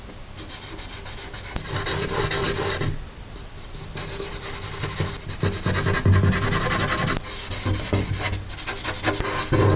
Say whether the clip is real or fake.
real